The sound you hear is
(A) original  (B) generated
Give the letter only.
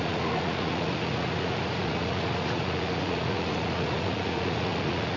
B